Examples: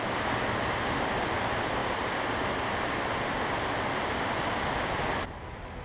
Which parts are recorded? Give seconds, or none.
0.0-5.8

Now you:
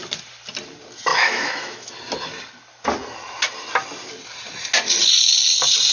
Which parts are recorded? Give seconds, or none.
0.0-1.1; 1.9-5.9

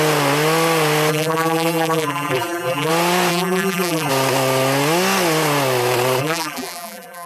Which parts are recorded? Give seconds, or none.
0.0-1.1; 2.9-3.3; 4.1-6.2